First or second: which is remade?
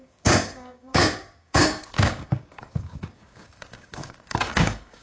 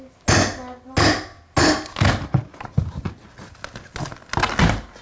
first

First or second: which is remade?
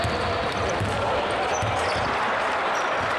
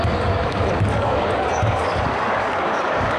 second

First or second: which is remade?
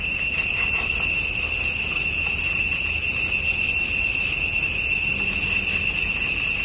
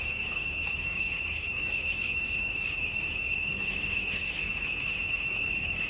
second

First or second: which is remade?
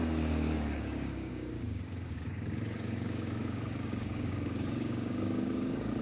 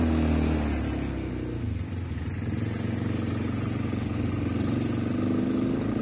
first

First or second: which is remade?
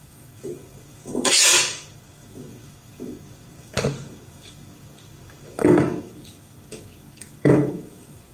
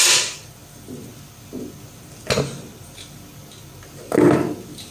first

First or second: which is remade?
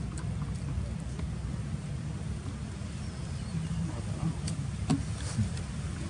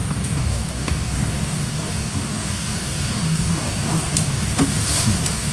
second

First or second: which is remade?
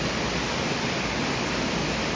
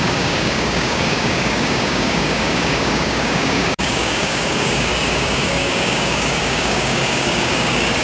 second